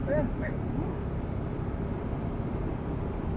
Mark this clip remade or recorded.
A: recorded